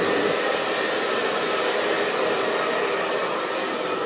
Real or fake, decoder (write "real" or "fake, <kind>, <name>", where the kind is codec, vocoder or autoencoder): real